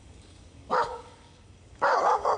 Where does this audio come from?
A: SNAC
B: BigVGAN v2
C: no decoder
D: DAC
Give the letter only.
D